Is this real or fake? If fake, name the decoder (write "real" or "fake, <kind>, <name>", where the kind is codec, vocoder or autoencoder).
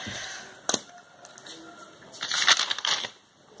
real